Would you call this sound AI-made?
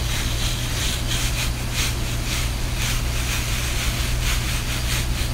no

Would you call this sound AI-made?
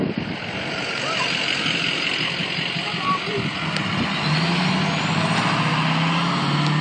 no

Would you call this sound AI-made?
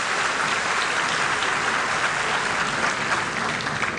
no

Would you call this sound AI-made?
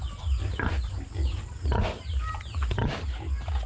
no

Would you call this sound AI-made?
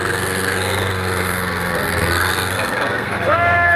yes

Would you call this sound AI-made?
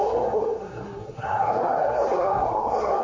yes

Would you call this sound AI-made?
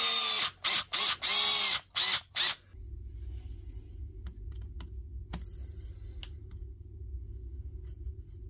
no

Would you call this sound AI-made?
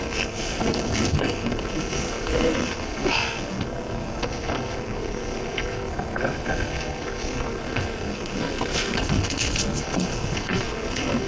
yes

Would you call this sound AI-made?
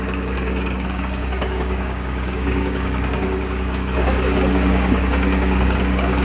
yes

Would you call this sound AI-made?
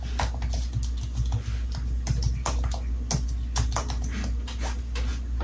no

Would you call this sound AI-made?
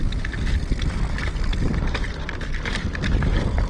yes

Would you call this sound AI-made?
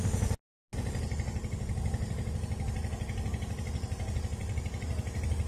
no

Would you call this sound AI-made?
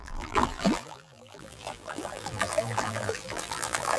yes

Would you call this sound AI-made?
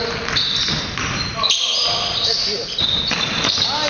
no